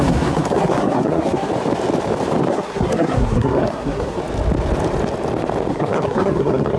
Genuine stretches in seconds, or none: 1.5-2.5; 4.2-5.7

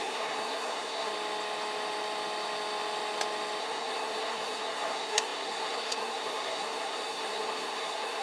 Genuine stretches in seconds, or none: 1.1-3.6

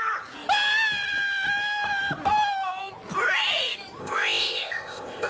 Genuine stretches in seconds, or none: 0.0-4.0

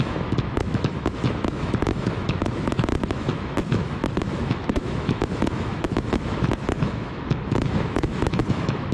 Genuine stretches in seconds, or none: none

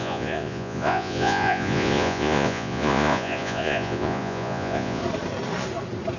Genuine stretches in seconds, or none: 5.0-6.2

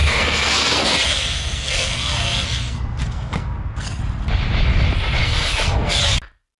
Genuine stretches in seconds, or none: 4.0-5.2; 6.0-6.6

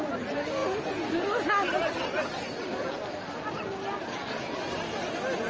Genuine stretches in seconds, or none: 0.0-5.5

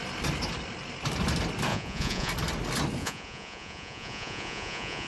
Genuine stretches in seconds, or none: 0.0-1.7; 2.3-3.0